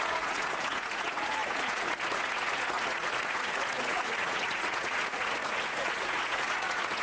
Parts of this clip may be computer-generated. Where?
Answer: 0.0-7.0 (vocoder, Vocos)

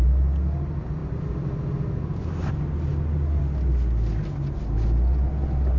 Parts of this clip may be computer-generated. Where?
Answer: none

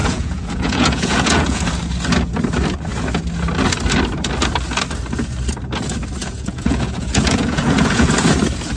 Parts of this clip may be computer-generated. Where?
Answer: 0.0-1.6 (vocoder, Vocos); 6.2-8.1

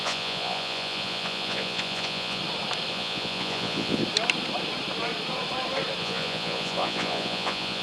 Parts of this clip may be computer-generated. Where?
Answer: 0.0-2.4 (vocoder, Vocos); 2.9-4.0; 6.0-7.8